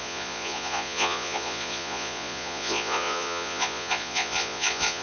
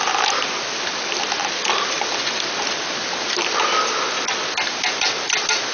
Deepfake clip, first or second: first